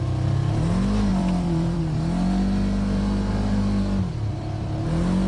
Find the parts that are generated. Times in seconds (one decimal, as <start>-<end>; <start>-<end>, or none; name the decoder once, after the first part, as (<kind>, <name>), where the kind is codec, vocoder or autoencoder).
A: 1.1-1.8 (vocoder, BigVGAN v2)